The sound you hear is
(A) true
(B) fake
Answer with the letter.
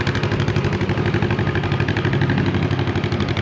A